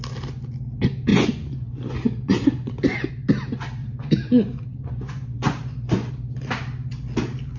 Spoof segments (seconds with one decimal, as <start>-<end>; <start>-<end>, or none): 1.1-3.1; 3.8-6.1